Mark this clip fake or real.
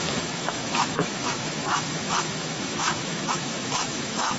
fake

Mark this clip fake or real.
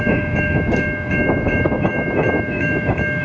fake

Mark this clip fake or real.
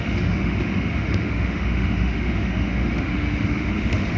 fake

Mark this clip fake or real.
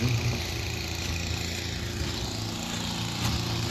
real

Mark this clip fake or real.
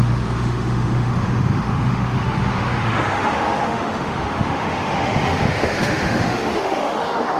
fake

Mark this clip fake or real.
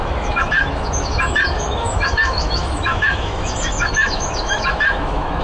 fake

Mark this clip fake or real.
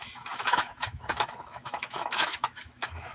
fake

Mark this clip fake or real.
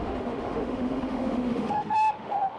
fake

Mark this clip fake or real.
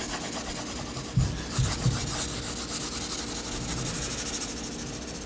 real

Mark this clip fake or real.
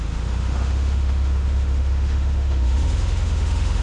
fake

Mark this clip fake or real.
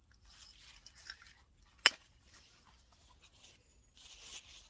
real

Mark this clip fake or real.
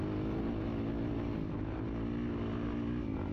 real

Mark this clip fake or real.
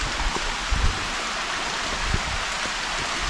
real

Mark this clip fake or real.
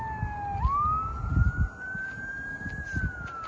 real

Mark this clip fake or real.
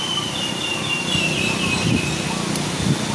real